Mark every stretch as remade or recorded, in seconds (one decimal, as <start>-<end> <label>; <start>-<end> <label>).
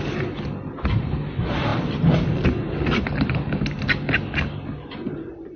0.0-5.6 recorded